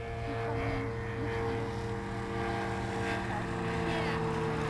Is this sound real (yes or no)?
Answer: yes